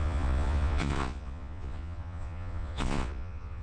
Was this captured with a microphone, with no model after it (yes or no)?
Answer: no